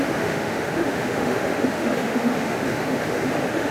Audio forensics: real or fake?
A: fake